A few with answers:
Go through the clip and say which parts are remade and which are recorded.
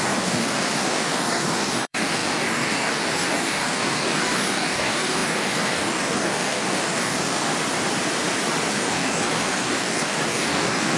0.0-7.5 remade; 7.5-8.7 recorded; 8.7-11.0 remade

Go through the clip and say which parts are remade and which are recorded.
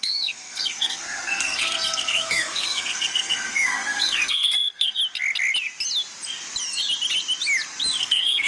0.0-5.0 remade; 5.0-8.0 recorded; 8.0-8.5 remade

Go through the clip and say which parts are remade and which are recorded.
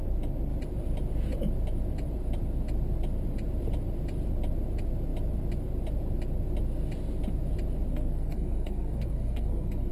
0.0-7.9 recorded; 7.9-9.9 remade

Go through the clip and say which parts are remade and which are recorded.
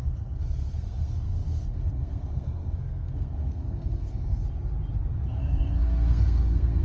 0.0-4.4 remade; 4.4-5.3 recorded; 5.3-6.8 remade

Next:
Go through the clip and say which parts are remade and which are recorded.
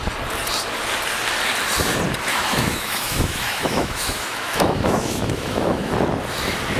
0.0-2.3 recorded; 2.3-5.9 remade; 5.9-6.8 recorded